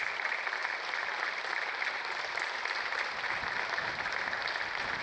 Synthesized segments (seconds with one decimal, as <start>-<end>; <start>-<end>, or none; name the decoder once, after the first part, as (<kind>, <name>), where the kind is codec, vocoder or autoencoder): none